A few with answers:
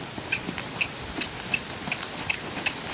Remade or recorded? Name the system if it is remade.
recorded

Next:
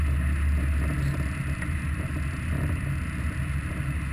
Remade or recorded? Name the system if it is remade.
recorded